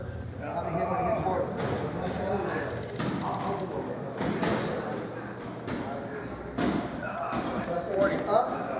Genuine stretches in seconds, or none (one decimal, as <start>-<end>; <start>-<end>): 0.0-8.8